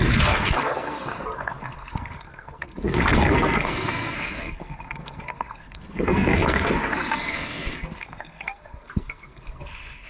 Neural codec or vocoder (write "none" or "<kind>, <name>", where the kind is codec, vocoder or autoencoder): codec, SNAC